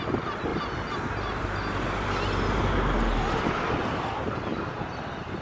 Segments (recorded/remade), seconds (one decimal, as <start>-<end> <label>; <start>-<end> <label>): 0.0-5.4 recorded